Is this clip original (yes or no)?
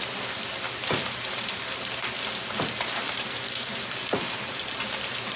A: yes